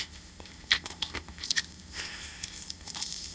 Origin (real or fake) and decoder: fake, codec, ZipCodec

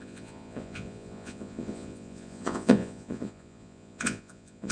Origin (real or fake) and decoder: fake, vocoder, Vocos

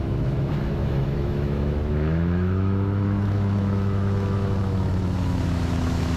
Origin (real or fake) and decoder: fake, autoencoder, DAC-VAE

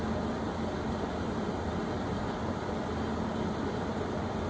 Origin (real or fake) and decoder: real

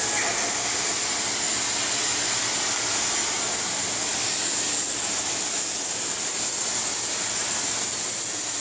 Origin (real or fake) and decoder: real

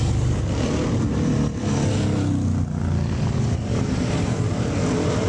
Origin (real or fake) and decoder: real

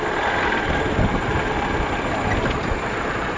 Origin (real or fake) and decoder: real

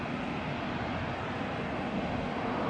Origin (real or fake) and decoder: real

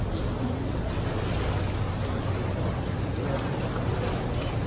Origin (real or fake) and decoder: real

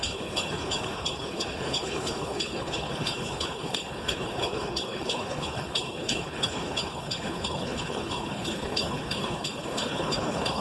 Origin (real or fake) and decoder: fake, codec, HILCodec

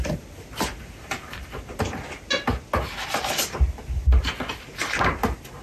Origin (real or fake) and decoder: real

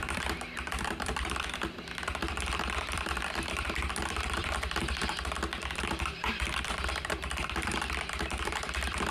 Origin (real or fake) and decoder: fake, vocoder, BigVGAN v2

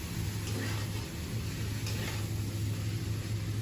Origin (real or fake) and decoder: real